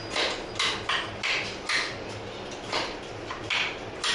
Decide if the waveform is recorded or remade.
recorded